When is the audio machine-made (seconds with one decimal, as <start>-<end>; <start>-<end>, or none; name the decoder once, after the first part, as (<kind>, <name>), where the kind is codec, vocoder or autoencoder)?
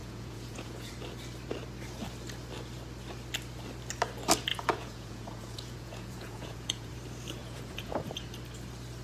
0.0-0.9 (vocoder, Vocos); 4.5-6.9; 7.4-8.0